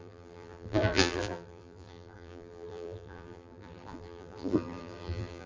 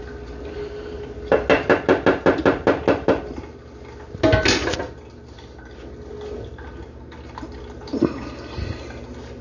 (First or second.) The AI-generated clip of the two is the first